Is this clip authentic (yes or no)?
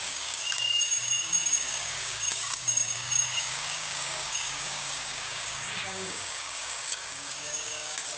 no